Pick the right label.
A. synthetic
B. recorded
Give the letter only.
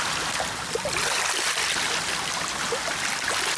B